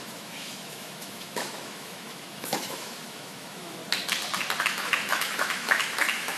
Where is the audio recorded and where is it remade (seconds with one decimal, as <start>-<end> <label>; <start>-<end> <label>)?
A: 0.0-3.8 remade; 3.8-4.6 recorded; 4.6-6.4 remade